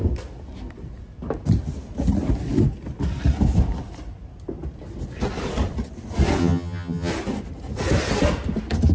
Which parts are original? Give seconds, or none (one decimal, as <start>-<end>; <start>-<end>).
0.0-6.4; 7.1-8.9